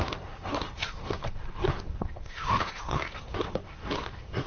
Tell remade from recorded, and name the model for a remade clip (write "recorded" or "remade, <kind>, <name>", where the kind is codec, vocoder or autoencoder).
remade, codec, SNAC